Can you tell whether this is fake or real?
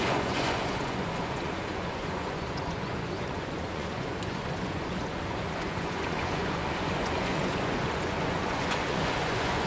fake